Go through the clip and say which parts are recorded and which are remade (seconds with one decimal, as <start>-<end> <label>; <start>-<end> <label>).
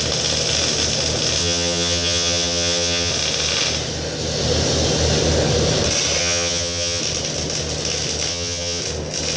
0.0-1.4 recorded; 1.4-3.1 remade; 3.1-6.2 recorded; 6.2-7.0 remade; 7.0-8.3 recorded; 8.3-8.8 remade; 8.8-9.4 recorded